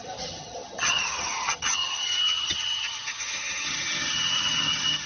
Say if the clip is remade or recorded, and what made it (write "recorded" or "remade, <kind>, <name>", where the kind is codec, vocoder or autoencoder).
remade, vocoder, HiFi-GAN